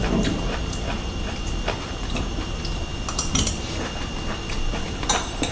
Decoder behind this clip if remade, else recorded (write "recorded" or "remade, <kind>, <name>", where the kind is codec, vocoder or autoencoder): remade, vocoder, BigVGAN v2